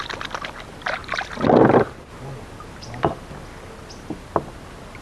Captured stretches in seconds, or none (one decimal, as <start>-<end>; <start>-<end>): 0.0-5.0